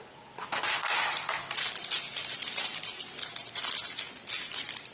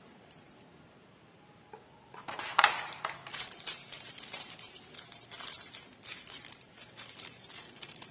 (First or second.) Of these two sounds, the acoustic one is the first